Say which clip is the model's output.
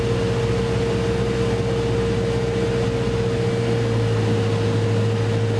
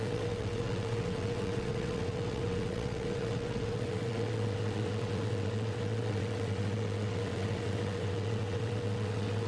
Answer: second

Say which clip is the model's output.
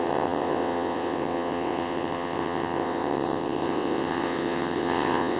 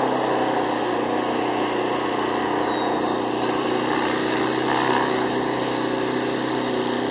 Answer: first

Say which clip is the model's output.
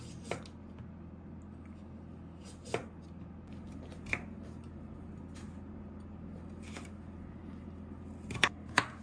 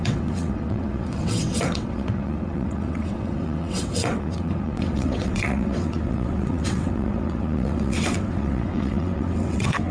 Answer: second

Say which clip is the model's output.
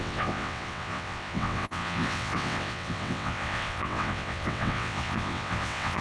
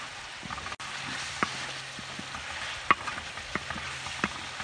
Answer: first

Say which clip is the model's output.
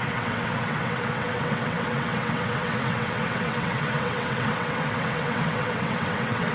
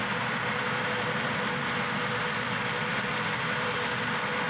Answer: first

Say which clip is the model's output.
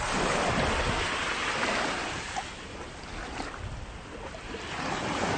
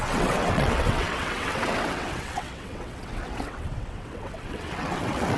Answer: second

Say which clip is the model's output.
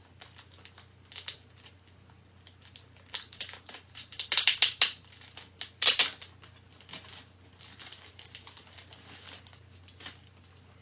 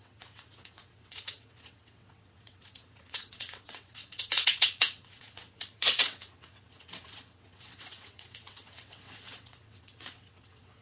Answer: second